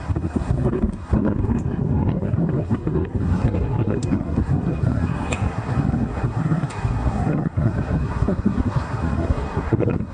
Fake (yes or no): yes